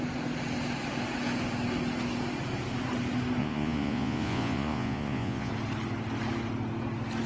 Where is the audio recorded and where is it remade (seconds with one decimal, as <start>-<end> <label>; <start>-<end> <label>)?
0.0-3.4 recorded; 3.4-5.5 remade; 5.5-7.3 recorded